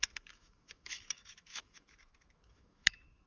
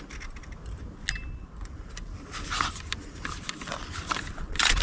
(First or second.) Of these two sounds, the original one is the second